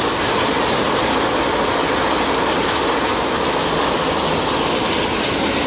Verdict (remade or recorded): recorded